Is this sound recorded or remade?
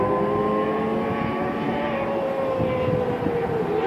recorded